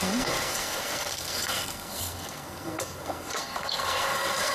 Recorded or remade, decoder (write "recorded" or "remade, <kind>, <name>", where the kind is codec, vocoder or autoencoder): remade, codec, SNAC